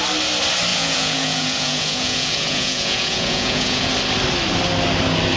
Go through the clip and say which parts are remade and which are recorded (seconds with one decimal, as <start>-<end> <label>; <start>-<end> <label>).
0.0-0.7 recorded; 0.7-3.9 remade; 3.9-5.4 recorded